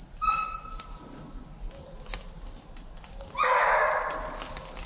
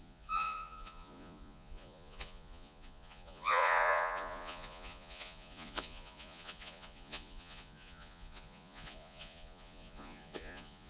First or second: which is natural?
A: first